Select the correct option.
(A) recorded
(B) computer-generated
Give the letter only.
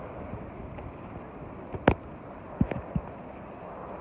A